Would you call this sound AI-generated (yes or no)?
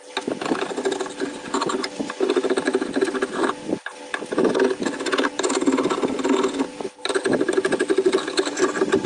no